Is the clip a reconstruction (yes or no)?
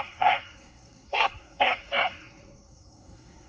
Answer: yes